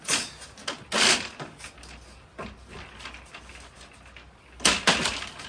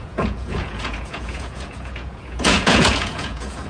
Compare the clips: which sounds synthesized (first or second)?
second